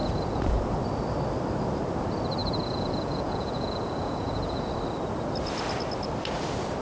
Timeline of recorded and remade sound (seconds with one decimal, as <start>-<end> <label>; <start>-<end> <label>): 0.0-0.6 remade; 0.6-2.4 recorded; 2.4-4.7 remade; 4.7-6.8 recorded